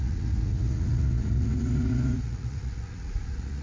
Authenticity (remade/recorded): remade